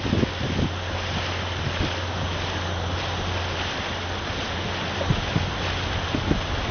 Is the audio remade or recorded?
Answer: recorded